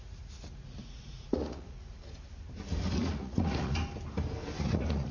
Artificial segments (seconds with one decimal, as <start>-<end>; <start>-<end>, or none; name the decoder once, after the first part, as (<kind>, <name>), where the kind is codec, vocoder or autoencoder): 0.0-2.0 (vocoder, Vocos); 3.0-3.8; 4.6-5.1